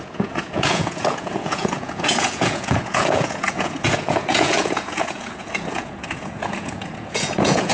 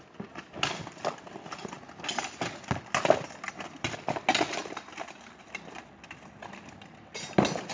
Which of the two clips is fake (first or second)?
first